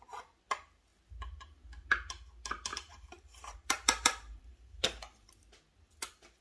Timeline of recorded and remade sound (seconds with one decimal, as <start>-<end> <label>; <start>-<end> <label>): 0.0-2.7 recorded; 2.7-5.3 remade; 5.3-6.4 recorded